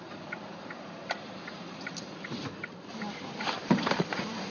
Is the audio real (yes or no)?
no